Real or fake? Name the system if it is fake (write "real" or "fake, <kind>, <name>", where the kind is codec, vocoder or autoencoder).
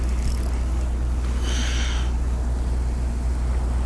real